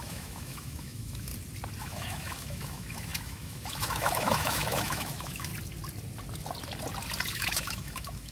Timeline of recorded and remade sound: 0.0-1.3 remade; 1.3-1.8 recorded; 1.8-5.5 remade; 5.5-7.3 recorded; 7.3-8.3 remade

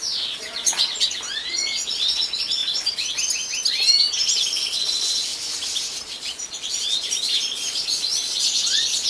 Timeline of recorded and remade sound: 0.0-2.6 remade; 2.6-4.8 recorded; 4.8-5.3 remade; 5.3-5.9 recorded; 5.9-9.1 remade